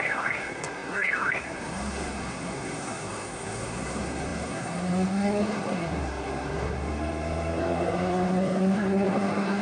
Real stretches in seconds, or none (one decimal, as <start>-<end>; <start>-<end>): none